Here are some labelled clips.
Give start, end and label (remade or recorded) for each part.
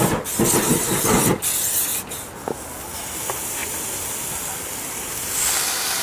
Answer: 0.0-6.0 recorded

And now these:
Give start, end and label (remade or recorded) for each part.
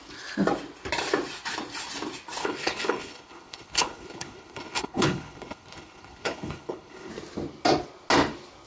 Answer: 0.0-2.4 recorded; 2.4-7.1 remade; 7.1-8.7 recorded